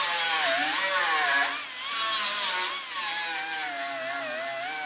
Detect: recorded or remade recorded